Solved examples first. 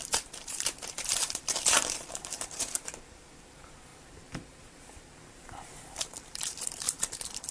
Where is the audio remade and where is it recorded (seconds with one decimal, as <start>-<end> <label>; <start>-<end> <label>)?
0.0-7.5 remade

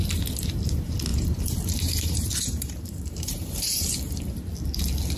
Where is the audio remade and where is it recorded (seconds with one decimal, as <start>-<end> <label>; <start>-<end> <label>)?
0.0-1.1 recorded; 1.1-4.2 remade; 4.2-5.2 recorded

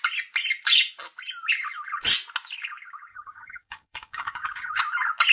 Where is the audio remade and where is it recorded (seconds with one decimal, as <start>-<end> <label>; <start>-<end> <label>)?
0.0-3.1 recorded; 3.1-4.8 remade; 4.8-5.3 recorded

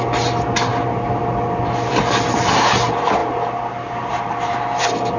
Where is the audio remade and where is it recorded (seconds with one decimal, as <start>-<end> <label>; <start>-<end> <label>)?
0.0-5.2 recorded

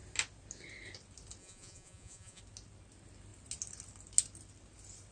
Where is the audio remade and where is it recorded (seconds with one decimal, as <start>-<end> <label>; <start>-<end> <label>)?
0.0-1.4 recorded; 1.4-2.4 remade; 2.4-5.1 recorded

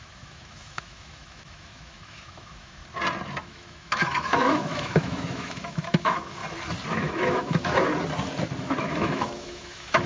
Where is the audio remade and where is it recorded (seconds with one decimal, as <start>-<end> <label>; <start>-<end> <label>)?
0.0-2.8 remade; 2.8-3.4 recorded; 3.4-6.4 remade; 6.4-6.9 recorded; 6.9-7.9 remade; 7.9-8.8 recorded; 8.8-10.1 remade

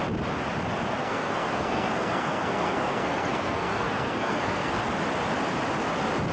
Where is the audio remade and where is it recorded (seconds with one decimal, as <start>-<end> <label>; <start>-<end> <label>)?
0.0-1.0 recorded; 1.0-4.8 remade; 4.8-6.3 recorded